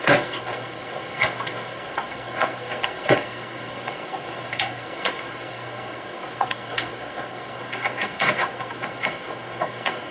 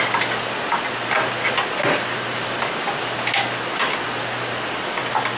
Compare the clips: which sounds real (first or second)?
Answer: second